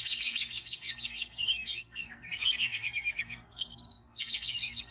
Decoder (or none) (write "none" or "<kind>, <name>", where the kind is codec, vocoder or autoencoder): codec, SNAC